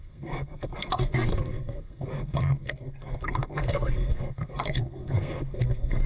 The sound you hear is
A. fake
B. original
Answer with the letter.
A